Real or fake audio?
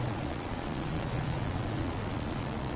fake